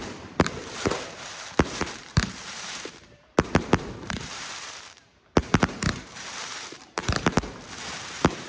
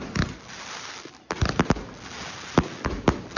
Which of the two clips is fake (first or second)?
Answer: first